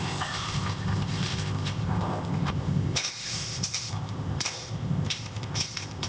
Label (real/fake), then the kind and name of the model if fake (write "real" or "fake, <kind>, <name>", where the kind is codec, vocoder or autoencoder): fake, codec, ZipCodec